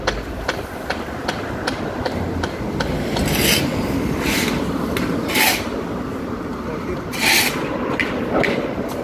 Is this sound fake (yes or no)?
no